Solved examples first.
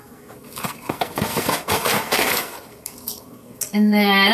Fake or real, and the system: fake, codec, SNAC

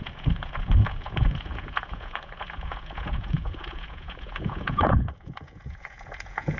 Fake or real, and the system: fake, vocoder, Vocos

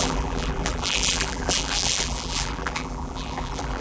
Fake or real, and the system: fake, vocoder, BigVGAN v2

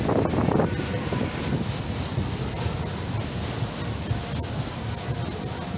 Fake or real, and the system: real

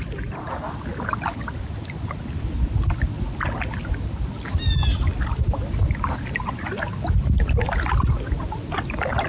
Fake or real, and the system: real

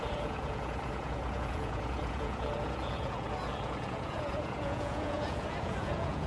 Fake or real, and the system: fake, vocoder, Vocos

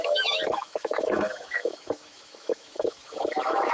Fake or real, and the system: fake, autoencoder, DAC-VAE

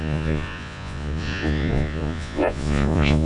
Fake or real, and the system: fake, vocoder, Vocos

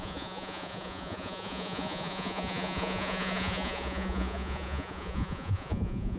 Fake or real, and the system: fake, vocoder, Vocos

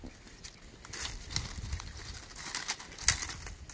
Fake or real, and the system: real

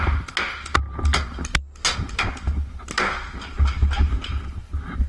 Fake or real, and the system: real